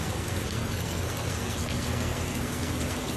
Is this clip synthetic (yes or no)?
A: yes